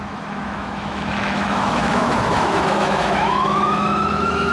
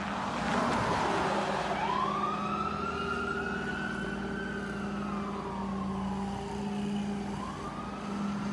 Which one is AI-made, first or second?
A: first